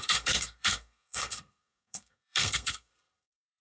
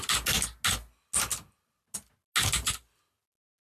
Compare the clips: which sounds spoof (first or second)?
first